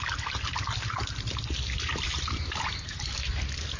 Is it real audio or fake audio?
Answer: real